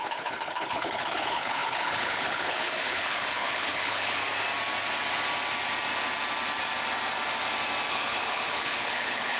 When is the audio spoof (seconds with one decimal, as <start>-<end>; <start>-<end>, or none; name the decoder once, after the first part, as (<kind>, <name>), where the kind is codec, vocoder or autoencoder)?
0.0-4.2 (codec, HILCodec); 7.9-9.4